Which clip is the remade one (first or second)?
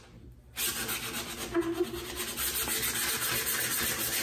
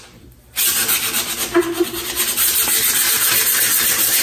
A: second